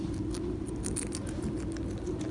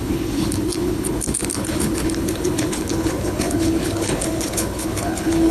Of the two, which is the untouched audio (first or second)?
first